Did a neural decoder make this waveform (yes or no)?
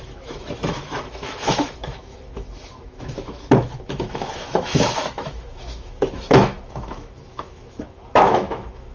yes